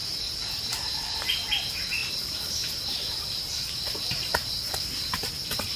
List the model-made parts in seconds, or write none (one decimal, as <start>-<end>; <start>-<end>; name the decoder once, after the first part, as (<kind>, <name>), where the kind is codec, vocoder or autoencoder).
0.0-5.8 (vocoder, BigVGAN v2)